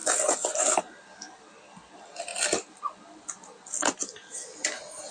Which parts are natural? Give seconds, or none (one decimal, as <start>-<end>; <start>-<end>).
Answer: 0.0-5.1